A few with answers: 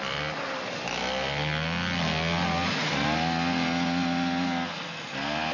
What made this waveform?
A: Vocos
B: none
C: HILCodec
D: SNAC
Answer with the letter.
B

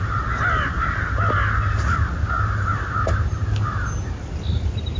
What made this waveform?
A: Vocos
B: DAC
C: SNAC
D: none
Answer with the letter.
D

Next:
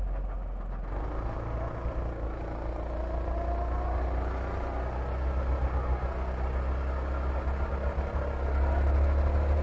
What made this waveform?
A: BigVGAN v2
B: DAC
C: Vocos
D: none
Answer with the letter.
D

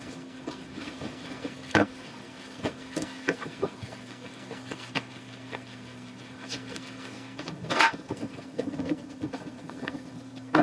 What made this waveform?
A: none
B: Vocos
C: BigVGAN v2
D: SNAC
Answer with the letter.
D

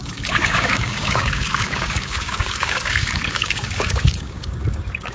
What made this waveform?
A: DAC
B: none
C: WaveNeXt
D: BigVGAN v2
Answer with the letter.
A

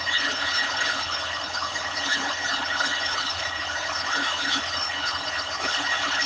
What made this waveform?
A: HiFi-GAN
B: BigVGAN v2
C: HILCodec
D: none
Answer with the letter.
C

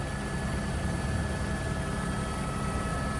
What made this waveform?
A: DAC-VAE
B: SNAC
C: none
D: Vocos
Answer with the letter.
C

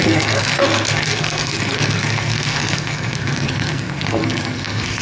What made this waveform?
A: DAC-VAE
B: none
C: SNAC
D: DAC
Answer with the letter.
C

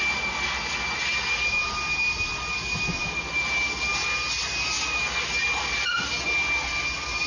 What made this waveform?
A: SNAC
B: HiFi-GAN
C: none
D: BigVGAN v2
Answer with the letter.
C